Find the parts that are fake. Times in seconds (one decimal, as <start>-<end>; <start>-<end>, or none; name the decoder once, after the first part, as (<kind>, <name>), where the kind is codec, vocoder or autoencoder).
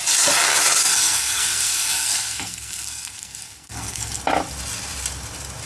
0.8-4.2 (codec, SNAC)